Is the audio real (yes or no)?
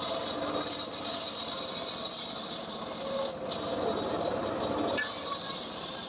yes